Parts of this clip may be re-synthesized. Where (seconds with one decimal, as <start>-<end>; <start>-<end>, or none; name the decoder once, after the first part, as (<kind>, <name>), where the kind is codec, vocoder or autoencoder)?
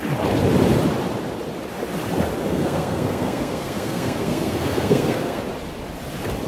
2.5-5.4 (codec, SNAC)